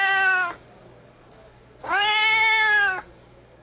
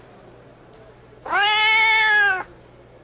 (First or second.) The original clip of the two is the second